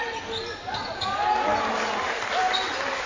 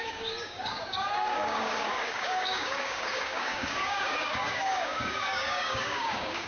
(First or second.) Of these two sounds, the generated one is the second